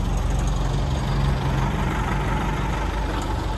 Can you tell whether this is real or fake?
real